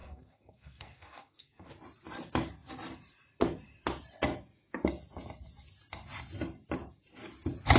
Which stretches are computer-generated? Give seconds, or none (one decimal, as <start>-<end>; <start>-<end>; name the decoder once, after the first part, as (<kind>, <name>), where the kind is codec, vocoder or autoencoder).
0.0-1.7 (codec, SNAC)